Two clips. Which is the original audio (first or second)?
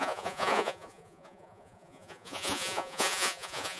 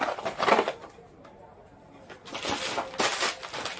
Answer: second